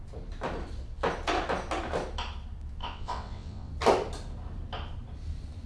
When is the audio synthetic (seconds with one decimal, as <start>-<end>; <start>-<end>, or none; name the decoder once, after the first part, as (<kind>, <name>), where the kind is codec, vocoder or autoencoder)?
2.8-3.7 (vocoder, WaveNeXt)